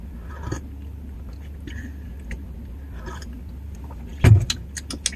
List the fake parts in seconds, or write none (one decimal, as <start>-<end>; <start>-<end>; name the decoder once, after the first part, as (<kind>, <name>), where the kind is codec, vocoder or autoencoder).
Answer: none